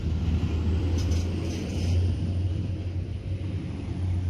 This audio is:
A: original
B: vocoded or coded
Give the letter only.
B